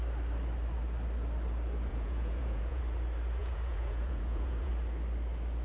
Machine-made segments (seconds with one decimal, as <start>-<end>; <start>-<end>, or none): 1.9-2.8; 3.4-4.7